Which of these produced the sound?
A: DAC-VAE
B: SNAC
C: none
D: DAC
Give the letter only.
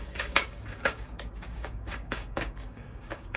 D